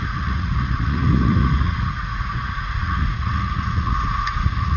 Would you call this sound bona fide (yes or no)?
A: no